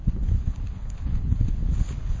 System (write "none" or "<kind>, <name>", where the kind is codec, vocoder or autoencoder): codec, HILCodec